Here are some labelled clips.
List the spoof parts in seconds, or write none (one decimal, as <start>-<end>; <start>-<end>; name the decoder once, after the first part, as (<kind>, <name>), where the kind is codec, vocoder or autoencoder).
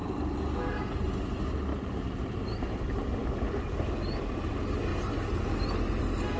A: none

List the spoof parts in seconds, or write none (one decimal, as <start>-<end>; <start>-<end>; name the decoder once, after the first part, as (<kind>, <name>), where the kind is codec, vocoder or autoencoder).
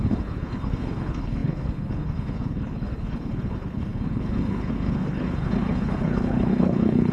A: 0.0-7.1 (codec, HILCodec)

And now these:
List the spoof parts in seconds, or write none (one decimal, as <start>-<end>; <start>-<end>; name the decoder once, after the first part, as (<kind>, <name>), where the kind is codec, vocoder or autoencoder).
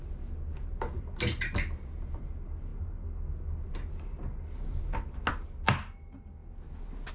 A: none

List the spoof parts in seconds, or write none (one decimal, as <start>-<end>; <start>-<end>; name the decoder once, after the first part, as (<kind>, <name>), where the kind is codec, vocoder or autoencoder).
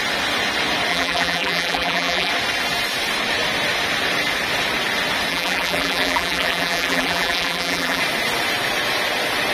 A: 0.9-2.3 (vocoder, BigVGAN v2); 5.3-8.0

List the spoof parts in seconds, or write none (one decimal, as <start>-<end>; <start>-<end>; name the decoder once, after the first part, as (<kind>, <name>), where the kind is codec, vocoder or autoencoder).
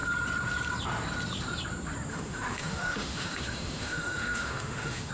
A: 2.1-5.1 (autoencoder, DAC-VAE)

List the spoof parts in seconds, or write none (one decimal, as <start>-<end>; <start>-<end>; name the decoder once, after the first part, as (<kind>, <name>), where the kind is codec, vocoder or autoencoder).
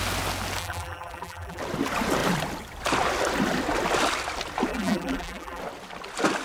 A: 0.6-1.6 (vocoder, BigVGAN v2); 4.7-5.6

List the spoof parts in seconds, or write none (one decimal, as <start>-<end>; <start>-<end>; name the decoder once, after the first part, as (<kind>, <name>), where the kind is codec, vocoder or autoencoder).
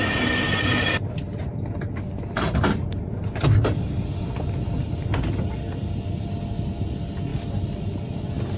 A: none